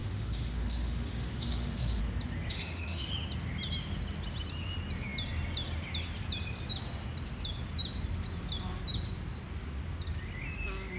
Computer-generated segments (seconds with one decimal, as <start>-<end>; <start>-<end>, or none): 0.0-2.0; 2.5-3.1